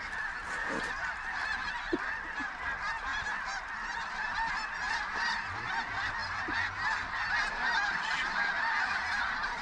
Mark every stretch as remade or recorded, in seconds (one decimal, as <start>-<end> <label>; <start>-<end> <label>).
0.0-3.1 remade; 3.1-4.9 recorded; 4.9-6.2 remade; 6.2-7.3 recorded; 7.3-9.6 remade